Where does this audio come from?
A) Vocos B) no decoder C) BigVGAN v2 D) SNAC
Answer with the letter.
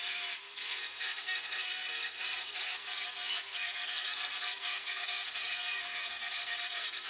D